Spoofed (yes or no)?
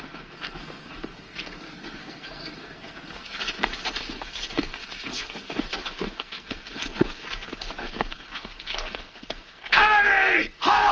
yes